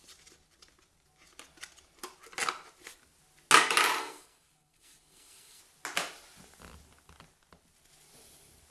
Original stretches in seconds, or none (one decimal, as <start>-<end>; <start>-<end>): 0.0-4.0; 5.6-8.7